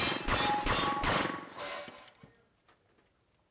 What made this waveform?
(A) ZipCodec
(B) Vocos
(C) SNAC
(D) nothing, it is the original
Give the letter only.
D